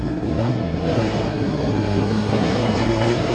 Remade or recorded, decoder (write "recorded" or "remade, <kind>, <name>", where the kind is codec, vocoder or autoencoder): remade, codec, SNAC